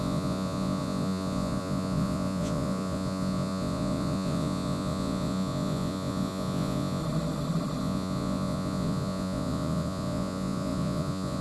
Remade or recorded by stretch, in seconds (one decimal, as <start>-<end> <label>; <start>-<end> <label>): 0.0-7.0 remade; 7.0-7.8 recorded; 7.8-11.4 remade